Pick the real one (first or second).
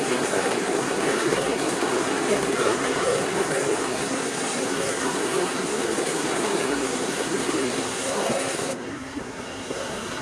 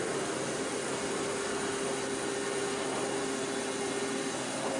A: second